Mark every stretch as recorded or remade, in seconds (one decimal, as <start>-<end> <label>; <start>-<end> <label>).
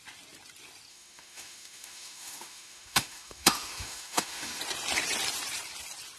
0.0-0.9 recorded; 0.9-4.6 remade; 4.6-6.2 recorded